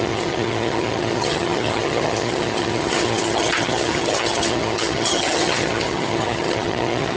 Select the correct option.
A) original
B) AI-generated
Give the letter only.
B